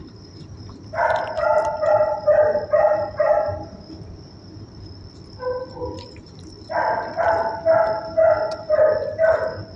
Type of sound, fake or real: real